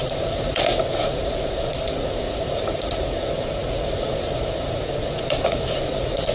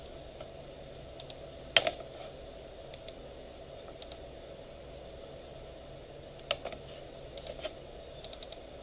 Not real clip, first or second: first